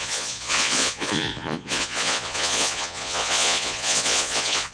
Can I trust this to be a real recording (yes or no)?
no